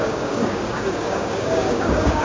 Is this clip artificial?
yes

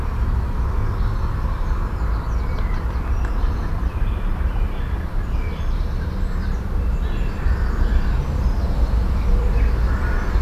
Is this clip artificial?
no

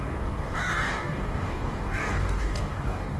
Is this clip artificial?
yes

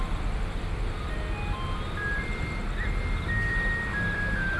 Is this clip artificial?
no